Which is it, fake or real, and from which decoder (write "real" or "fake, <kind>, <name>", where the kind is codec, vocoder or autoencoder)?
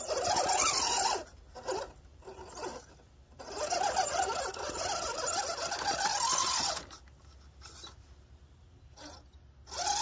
real